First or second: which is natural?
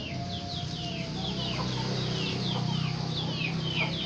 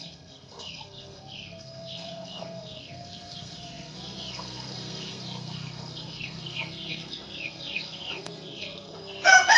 first